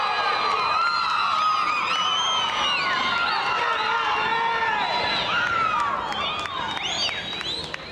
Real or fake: real